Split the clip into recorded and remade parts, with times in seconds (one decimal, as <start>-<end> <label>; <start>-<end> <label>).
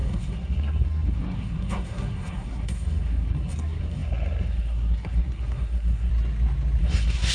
0.0-6.1 remade; 6.1-6.8 recorded; 6.8-7.3 remade